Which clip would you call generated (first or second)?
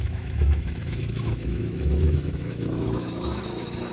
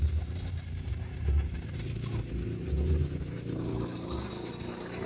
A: first